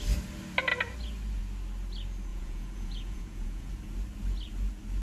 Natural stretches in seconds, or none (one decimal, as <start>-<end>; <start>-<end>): 0.0-2.3; 3.7-5.0